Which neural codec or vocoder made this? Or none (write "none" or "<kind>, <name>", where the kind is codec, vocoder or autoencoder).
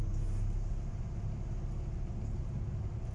none